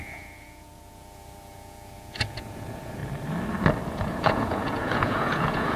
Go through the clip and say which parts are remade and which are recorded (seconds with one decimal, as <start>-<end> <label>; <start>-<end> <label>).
0.0-3.0 remade; 3.0-3.9 recorded; 3.9-5.8 remade